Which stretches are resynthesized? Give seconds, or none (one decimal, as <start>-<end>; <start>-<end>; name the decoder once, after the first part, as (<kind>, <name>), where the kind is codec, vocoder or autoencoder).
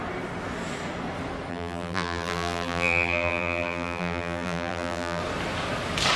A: 1.5-5.2 (vocoder, BigVGAN v2)